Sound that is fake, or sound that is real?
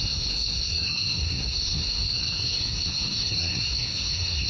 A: fake